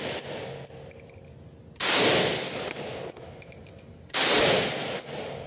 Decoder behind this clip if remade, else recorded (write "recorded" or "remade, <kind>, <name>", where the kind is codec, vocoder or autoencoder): recorded